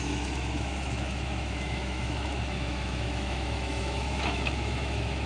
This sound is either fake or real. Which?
fake